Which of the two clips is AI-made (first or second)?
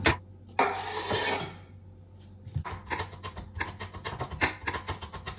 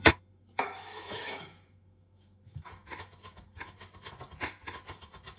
second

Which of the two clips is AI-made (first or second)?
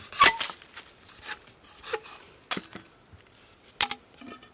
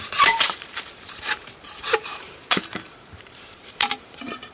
second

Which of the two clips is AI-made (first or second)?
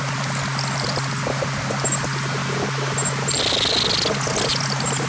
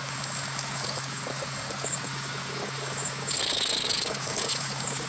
second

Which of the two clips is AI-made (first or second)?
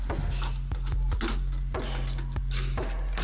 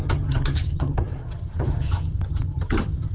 second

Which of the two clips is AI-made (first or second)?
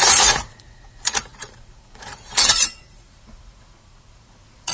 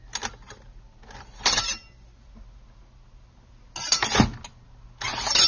first